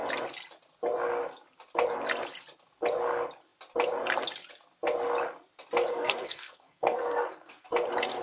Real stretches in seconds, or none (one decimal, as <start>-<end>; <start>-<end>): 0.0-5.9; 7.7-8.2